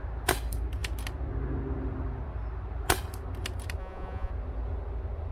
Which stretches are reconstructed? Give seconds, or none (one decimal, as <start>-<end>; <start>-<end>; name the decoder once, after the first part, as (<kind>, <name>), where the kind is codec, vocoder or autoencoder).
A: 3.8-4.3 (vocoder, Vocos)